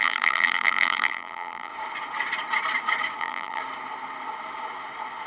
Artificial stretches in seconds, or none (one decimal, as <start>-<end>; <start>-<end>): 0.0-1.7; 3.2-3.6